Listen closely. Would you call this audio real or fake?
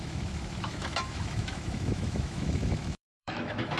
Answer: fake